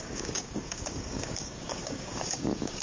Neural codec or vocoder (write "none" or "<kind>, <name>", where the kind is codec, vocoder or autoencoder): codec, DAC